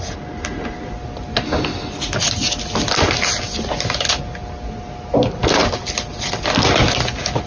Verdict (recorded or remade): recorded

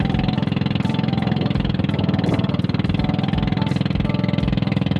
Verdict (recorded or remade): recorded